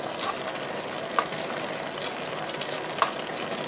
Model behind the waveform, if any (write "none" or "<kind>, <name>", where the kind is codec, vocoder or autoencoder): none